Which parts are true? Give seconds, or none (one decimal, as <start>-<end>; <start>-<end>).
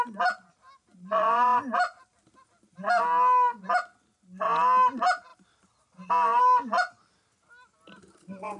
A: 0.0-8.6